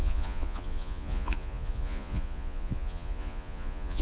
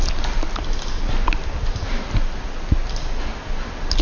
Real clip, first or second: second